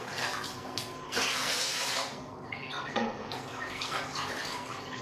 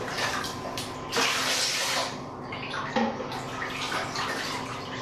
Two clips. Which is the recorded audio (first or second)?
second